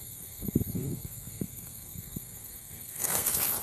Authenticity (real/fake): fake